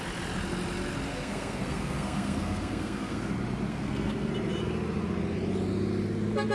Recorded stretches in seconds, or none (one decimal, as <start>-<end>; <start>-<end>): 0.0-1.1; 3.3-3.7; 4.3-6.5